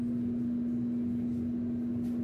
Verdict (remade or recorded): recorded